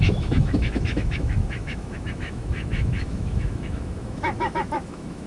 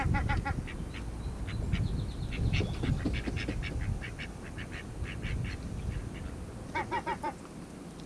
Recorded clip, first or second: second